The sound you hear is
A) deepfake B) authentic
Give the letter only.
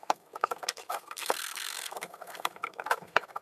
A